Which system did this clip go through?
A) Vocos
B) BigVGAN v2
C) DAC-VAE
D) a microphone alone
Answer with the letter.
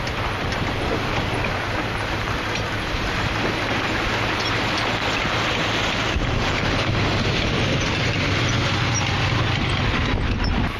D